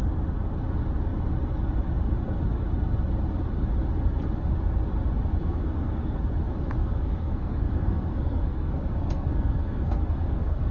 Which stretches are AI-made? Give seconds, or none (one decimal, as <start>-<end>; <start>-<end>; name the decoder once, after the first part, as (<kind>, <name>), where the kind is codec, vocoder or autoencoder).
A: 5.4-6.2 (codec, SNAC); 6.8-10.7